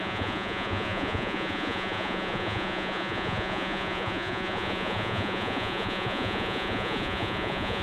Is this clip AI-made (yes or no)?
yes